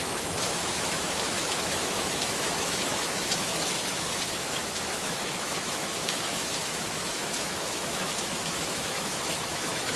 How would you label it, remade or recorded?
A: remade